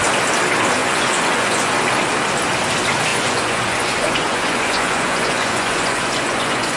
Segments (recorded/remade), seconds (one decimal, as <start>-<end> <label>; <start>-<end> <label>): 0.0-0.8 recorded; 0.8-1.7 remade; 1.7-3.1 recorded; 3.1-6.8 remade